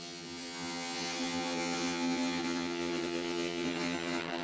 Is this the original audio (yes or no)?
no